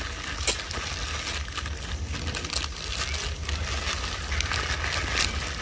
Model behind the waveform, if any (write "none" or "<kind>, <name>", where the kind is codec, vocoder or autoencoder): none